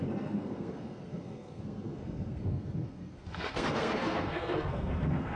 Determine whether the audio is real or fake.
fake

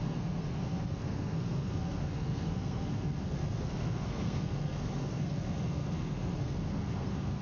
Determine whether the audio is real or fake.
fake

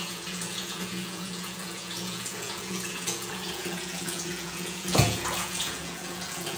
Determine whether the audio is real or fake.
fake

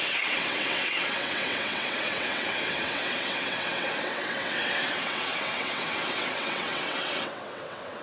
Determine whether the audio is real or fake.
fake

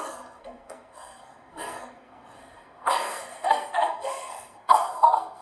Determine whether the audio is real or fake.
fake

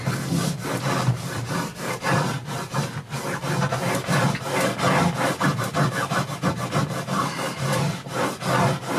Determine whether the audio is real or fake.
real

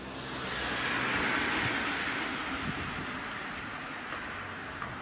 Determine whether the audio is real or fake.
real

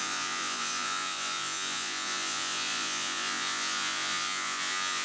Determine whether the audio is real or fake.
fake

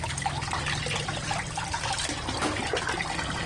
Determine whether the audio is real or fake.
real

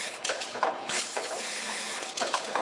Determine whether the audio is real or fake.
fake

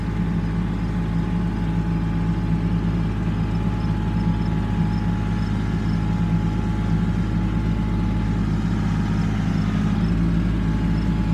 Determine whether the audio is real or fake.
real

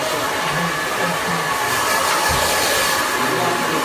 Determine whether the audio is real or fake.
real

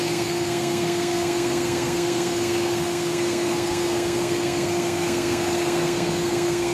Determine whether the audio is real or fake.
fake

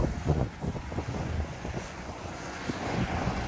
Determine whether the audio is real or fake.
fake